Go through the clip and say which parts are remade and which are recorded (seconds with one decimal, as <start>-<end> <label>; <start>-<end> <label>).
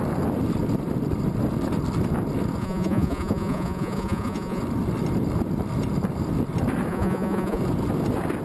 0.0-2.6 recorded; 2.6-4.6 remade; 4.6-6.9 recorded; 6.9-7.6 remade; 7.6-8.4 recorded